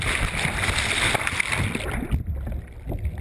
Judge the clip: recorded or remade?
recorded